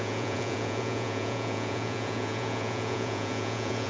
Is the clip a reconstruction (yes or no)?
yes